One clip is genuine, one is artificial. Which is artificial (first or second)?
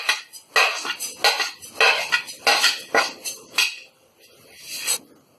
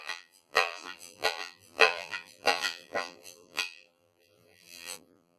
second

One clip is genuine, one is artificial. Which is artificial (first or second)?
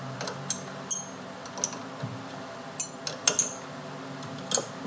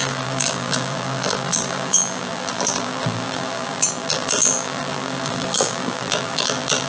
second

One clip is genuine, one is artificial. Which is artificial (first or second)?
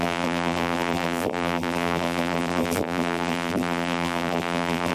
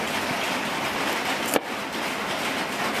first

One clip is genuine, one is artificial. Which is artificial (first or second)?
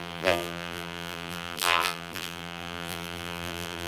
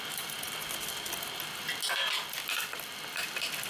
first